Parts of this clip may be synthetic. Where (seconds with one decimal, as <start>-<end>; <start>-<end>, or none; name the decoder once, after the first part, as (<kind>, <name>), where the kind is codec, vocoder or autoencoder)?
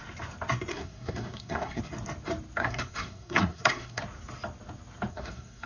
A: 0.7-1.8 (codec, SNAC); 2.6-4.0; 5.1-5.7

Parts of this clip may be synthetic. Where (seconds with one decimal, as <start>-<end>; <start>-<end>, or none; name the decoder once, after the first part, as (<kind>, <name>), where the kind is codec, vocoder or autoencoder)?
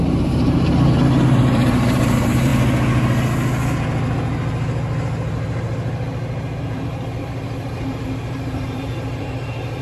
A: 0.0-2.5 (vocoder, BigVGAN v2); 6.6-9.8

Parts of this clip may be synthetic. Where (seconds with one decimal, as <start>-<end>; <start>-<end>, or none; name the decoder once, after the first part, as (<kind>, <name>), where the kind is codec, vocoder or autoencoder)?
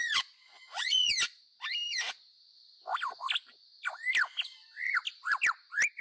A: 0.0-1.1 (vocoder, Vocos)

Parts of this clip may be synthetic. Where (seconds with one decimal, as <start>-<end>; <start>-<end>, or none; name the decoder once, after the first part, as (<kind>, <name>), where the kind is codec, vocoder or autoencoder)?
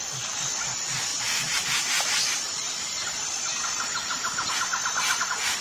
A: none